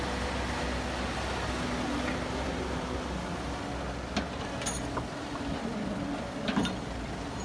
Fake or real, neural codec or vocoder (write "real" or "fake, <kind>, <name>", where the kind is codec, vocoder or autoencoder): real